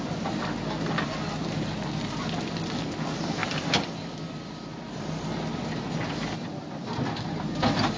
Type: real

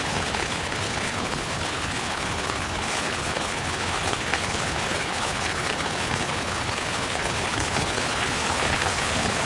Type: fake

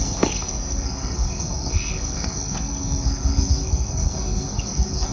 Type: fake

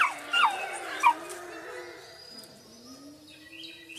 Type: real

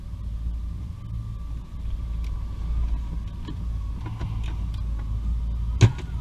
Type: real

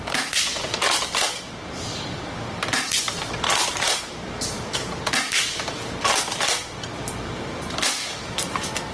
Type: fake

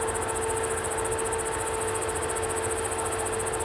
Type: real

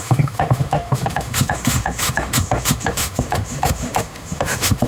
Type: fake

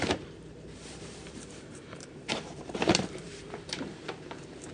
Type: fake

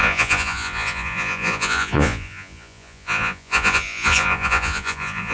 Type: fake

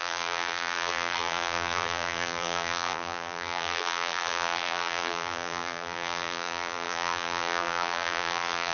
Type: fake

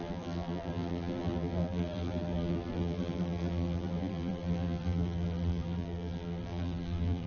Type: fake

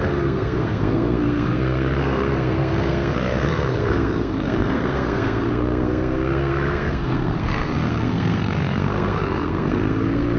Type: fake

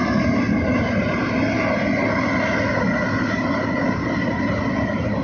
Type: real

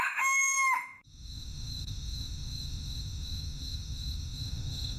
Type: fake